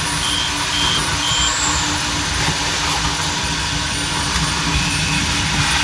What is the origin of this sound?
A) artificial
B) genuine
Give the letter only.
B